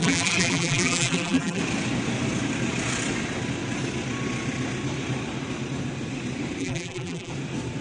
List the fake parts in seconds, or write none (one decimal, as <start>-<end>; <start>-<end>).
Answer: 0.0-1.6; 6.6-7.3